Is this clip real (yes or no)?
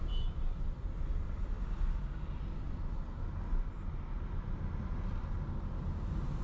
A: yes